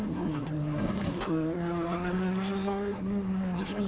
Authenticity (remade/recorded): remade